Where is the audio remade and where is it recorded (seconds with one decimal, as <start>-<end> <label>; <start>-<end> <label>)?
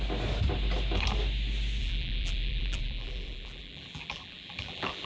0.0-1.8 recorded; 1.8-5.1 remade